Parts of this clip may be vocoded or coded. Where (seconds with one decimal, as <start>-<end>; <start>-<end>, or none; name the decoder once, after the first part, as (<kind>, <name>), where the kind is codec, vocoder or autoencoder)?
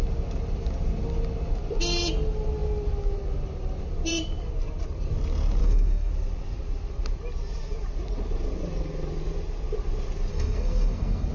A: 5.6-6.1 (codec, SNAC); 10.3-11.3